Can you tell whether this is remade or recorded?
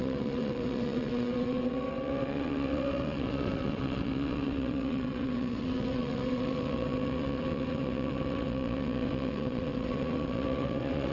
remade